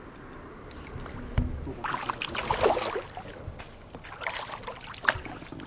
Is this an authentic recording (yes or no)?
yes